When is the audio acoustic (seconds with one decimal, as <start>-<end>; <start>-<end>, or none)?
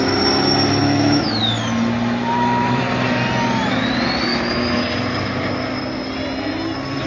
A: 0.0-0.8; 1.4-4.3; 4.8-7.1